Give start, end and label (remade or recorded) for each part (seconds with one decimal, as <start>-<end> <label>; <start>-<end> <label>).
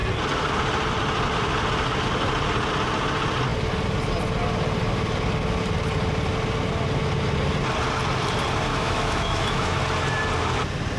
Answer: 0.0-8.7 recorded; 8.7-9.8 remade; 9.8-11.0 recorded